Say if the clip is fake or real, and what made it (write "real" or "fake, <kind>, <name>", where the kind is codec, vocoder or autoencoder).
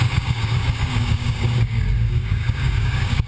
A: fake, codec, DAC